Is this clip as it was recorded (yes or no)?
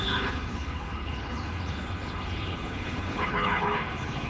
no